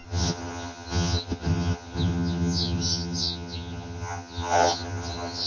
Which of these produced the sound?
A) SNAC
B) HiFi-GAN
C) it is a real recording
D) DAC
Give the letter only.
B